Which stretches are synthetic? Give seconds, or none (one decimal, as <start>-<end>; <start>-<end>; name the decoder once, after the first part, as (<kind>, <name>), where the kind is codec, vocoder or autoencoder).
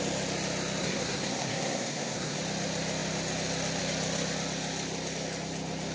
0.8-2.4 (codec, SNAC)